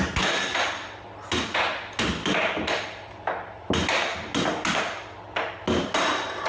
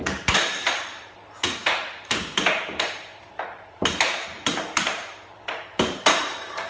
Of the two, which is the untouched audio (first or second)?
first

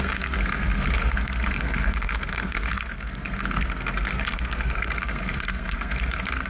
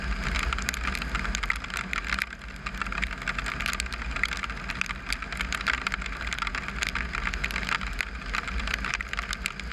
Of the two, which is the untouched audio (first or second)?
second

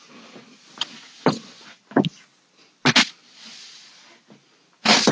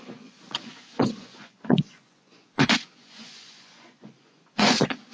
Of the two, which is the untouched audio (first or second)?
first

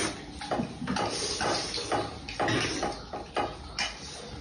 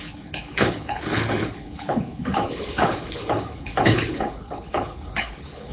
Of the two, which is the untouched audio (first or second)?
first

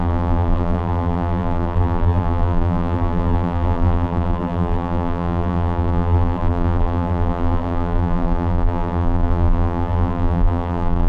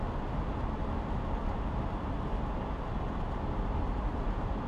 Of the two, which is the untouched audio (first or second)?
second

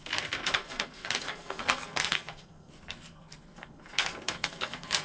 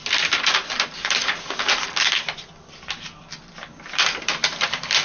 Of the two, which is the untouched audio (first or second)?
second